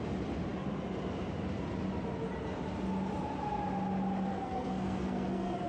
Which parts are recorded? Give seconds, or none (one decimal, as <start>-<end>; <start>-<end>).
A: 0.0-4.3